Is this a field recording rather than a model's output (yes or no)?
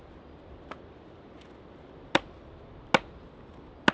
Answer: yes